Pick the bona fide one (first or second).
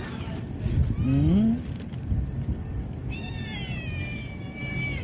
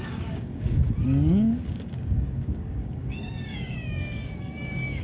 first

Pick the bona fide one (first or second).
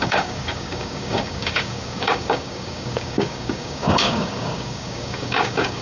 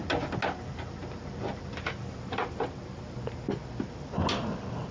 second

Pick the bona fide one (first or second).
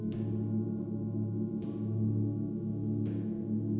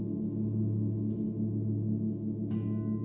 second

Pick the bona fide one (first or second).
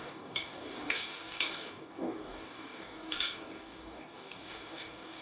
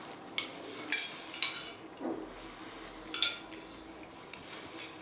second